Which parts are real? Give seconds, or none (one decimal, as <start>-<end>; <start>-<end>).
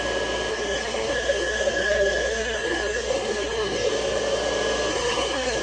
0.0-0.5; 3.9-4.9